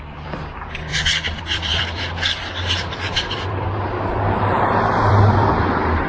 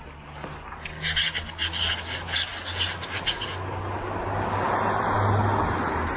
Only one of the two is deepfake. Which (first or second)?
first